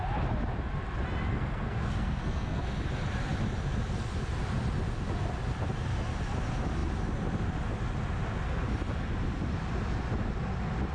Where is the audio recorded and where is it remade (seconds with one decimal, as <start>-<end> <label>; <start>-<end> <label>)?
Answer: 0.0-1.3 recorded; 1.3-2.6 remade; 2.6-10.9 recorded